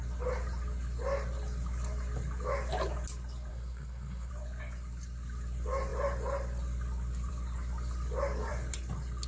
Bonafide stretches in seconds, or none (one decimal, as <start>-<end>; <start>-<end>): 0.0-3.5; 4.3-9.3